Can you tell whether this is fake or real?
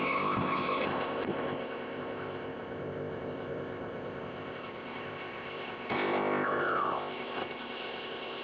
fake